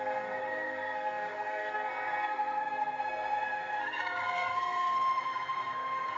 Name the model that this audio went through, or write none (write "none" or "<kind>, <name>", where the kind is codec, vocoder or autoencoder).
codec, SNAC